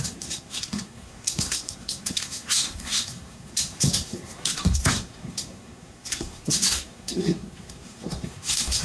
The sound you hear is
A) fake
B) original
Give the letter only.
A